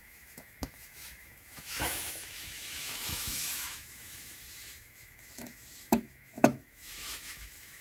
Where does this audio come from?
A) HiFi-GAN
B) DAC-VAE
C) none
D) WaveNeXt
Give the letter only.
B